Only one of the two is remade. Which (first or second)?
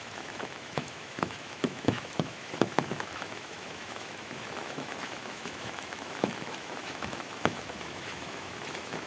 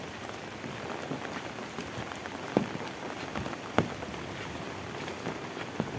first